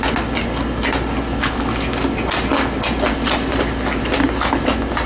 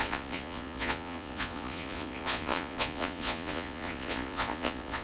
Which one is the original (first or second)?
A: first